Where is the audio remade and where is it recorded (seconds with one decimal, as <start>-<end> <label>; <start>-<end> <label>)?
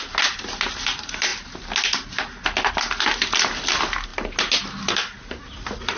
0.0-6.0 recorded